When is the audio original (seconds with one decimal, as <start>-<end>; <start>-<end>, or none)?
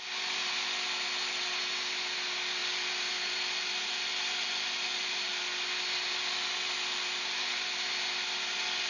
0.0-8.9